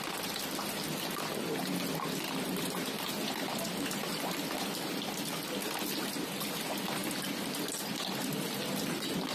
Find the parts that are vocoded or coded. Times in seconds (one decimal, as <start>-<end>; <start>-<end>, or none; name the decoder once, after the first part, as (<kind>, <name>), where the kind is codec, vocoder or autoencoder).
none